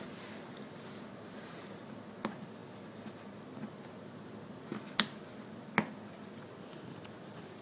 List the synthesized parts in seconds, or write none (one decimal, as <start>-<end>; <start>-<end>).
none